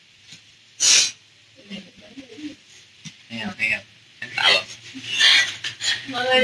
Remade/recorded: recorded